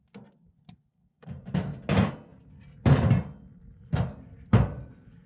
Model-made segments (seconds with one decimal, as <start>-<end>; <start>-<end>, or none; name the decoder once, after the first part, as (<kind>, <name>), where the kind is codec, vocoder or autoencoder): 0.9-1.5 (codec, DAC)